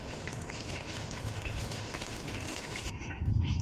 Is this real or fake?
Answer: fake